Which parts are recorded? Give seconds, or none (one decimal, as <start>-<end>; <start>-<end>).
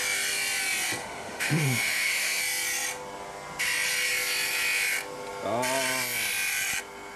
0.0-1.0; 2.4-7.2